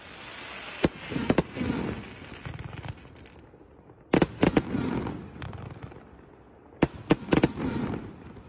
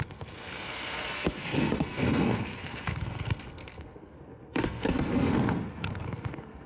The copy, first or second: second